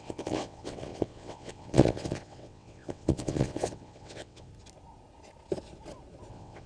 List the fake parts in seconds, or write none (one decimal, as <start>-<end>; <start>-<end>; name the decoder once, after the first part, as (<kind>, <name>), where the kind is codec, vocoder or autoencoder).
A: 0.0-4.5 (vocoder, WaveNeXt); 6.3-6.7